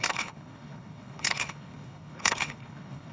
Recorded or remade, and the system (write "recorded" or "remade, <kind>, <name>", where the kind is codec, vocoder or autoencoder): remade, codec, HILCodec